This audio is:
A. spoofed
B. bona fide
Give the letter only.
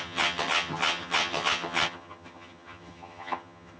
A